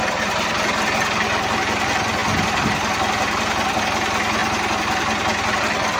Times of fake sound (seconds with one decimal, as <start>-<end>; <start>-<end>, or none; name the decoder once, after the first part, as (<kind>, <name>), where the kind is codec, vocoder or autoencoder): none